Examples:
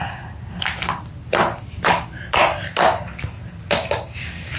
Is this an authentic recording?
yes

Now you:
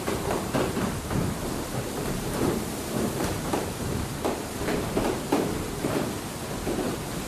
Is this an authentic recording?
no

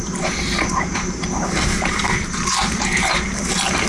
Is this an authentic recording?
no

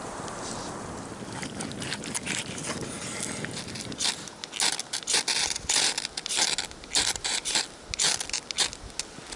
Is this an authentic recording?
yes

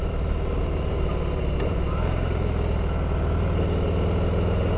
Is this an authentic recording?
yes